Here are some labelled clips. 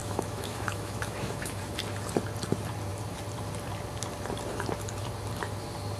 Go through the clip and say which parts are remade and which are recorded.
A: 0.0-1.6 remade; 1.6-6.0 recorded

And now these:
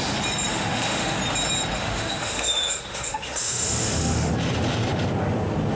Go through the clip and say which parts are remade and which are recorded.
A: 0.0-0.5 recorded; 0.5-1.2 remade; 1.2-1.8 recorded; 1.8-4.3 remade; 4.3-5.8 recorded